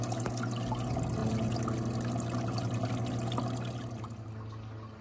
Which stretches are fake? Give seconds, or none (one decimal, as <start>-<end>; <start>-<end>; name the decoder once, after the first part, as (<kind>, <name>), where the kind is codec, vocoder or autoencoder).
none